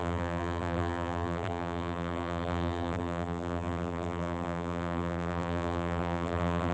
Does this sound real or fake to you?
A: fake